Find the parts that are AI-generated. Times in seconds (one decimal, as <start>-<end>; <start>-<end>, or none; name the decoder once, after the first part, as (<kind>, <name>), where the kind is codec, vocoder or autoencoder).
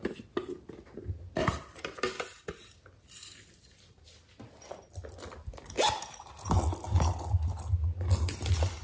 none